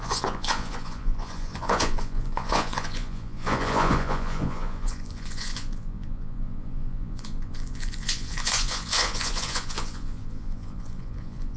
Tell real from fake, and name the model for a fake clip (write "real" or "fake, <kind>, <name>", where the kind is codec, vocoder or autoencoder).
fake, vocoder, Vocos